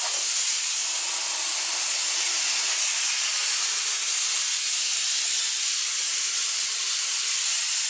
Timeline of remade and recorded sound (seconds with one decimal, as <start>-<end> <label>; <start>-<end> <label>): 0.0-7.9 recorded